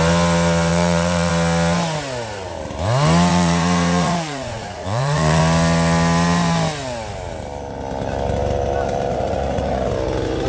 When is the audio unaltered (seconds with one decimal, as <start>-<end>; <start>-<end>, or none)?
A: 0.0-0.7; 1.3-3.3; 5.4-9.1; 9.9-10.5

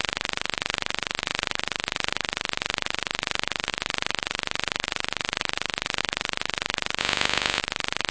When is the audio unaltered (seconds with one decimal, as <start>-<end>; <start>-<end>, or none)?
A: 0.0-7.0; 7.6-8.1

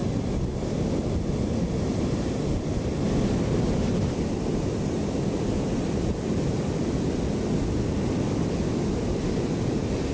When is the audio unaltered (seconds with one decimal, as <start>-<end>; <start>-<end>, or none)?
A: 0.0-10.1

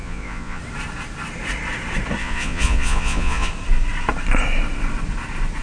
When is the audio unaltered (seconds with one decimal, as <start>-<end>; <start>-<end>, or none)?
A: 0.6-2.2; 3.5-5.6

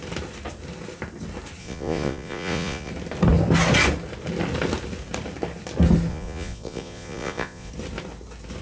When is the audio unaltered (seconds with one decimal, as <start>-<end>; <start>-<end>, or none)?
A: 0.0-1.6; 2.9-6.1; 7.7-8.6